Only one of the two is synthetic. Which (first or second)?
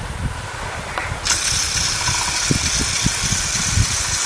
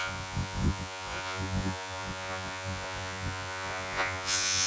second